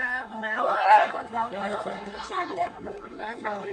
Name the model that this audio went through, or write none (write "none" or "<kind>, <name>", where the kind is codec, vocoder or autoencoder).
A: codec, SNAC